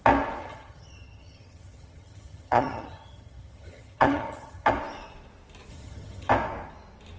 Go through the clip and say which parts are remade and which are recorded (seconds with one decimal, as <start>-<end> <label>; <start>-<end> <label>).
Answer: 0.0-0.4 recorded; 0.4-4.7 remade; 4.7-5.7 recorded; 5.7-6.3 remade; 6.3-7.2 recorded